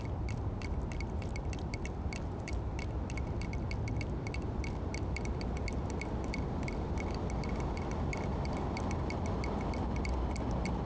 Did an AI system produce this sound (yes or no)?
no